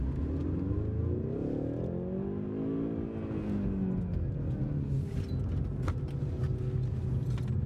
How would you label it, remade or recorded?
recorded